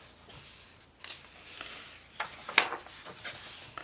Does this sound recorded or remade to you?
recorded